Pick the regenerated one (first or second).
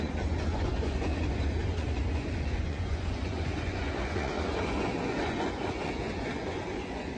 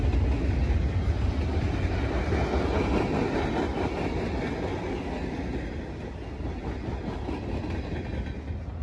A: first